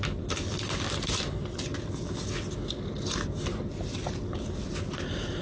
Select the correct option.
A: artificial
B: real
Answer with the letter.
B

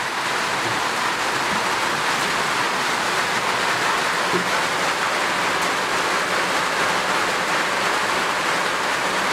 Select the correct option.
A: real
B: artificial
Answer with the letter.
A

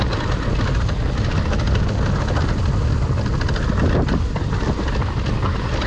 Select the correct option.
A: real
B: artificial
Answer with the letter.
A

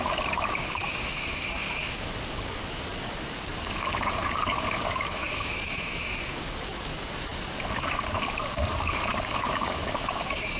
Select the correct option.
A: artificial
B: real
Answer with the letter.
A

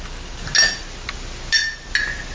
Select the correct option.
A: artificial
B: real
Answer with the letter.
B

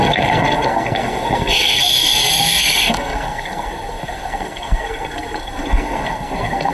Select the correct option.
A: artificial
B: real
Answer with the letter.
A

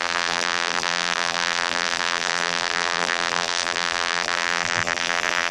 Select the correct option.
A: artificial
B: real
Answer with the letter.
A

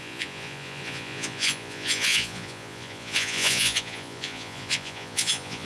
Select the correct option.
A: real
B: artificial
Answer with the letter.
B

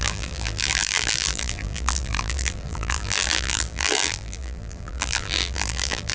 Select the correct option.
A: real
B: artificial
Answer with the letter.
B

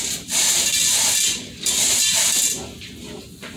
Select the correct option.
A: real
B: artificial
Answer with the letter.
A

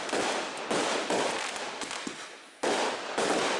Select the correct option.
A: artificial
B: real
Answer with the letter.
B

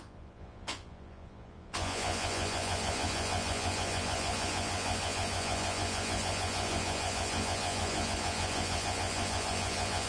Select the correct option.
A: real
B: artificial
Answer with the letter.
B